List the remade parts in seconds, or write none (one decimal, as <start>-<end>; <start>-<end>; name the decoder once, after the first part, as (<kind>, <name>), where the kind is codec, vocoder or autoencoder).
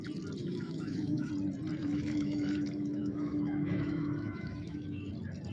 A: 0.4-1.3 (autoencoder, DAC-VAE); 1.8-5.1